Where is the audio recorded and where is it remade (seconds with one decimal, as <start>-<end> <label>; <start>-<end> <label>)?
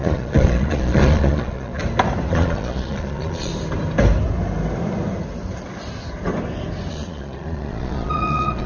0.0-1.8 remade; 1.8-2.3 recorded; 2.3-3.5 remade; 3.5-6.9 recorded; 6.9-8.7 remade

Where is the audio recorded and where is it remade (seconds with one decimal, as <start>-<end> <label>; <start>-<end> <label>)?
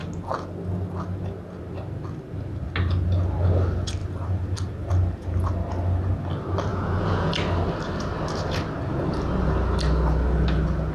0.0-6.7 recorded; 6.7-7.3 remade; 7.3-10.9 recorded